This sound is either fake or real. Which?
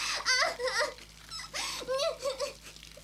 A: real